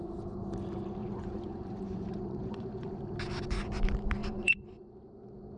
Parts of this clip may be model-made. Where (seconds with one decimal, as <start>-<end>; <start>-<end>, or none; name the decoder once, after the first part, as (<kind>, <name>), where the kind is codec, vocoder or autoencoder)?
1.0-2.9 (vocoder, Vocos); 4.2-4.9

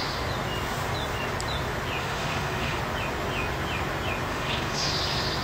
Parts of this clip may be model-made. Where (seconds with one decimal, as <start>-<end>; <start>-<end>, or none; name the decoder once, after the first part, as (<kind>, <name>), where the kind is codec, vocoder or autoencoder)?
2.0-2.8 (autoencoder, DAC-VAE); 4.3-4.9

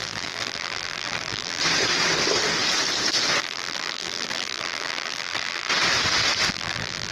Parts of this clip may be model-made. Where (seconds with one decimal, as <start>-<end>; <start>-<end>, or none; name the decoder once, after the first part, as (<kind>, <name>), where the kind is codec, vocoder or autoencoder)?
0.0-1.6 (vocoder, BigVGAN v2); 3.4-5.7; 6.5-7.1

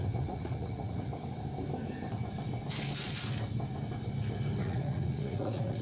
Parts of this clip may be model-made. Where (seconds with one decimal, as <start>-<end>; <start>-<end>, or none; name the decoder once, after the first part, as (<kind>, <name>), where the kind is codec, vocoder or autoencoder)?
0.0-1.1 (vocoder, Vocos); 4.6-5.8